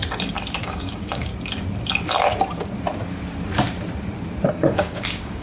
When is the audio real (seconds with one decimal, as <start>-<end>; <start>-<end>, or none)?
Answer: 0.0-0.6; 1.3-4.5